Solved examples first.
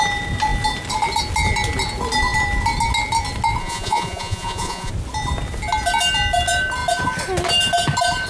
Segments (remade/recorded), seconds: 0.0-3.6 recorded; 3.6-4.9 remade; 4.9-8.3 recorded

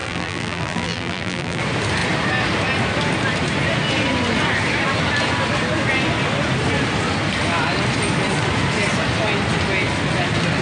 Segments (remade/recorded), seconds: 0.0-1.6 remade; 1.6-10.6 recorded

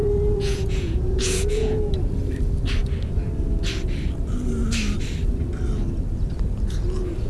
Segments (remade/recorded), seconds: 0.0-1.9 remade; 1.9-7.3 recorded

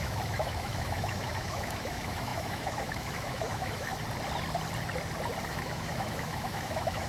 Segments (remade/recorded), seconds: 0.0-3.9 remade; 3.9-5.5 recorded; 5.5-7.1 remade